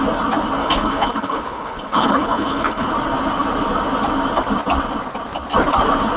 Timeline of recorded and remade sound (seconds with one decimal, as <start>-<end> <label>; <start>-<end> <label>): 0.0-0.6 recorded; 0.6-2.9 remade; 2.9-6.2 recorded